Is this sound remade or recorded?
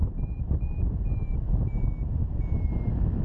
recorded